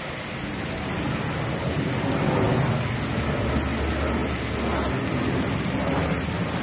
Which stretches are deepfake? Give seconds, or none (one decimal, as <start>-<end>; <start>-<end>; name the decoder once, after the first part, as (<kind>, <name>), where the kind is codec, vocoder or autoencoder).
none